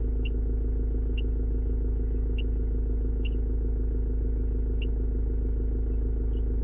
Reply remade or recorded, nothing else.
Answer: recorded